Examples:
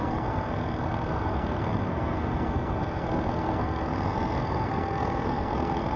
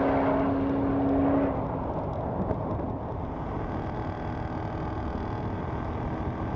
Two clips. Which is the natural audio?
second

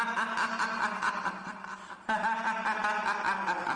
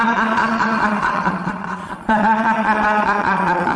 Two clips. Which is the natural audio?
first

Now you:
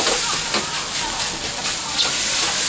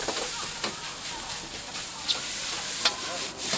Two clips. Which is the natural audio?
first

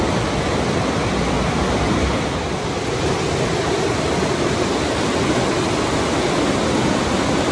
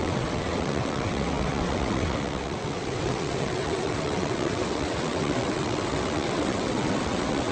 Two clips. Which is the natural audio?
first